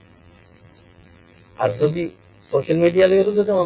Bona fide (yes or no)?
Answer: no